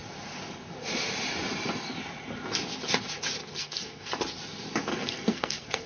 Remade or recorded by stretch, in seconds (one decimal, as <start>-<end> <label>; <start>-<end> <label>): 0.0-3.4 recorded; 3.4-4.1 remade; 4.1-4.9 recorded; 4.9-5.9 remade